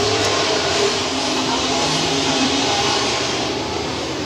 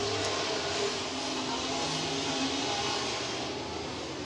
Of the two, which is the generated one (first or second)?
first